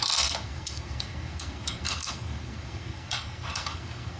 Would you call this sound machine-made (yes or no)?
yes